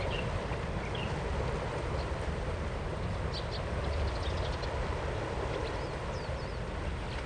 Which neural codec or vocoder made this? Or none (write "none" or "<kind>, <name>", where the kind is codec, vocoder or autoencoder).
none